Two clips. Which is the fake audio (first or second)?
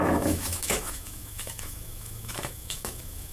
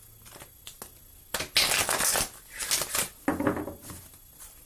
first